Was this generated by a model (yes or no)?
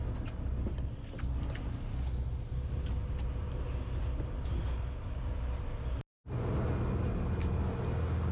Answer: no